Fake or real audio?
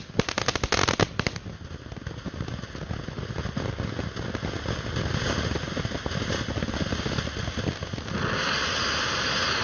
real